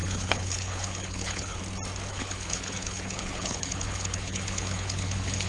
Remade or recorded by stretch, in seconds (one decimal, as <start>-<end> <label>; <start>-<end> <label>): 0.0-1.6 remade; 1.6-2.1 recorded; 2.1-5.5 remade